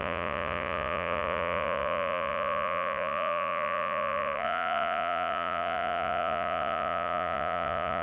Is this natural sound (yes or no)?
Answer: no